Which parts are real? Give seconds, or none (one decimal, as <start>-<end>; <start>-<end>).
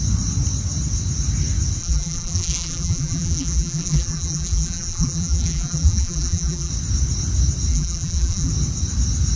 0.0-1.8; 6.7-7.7; 8.5-9.4